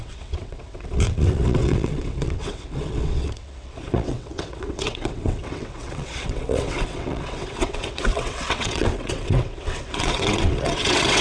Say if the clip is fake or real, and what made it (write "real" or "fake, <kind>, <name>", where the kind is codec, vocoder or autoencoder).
fake, vocoder, WaveNeXt